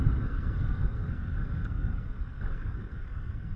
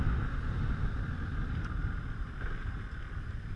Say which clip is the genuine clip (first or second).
second